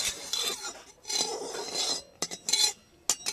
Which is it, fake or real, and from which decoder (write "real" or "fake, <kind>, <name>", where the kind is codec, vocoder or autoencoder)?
real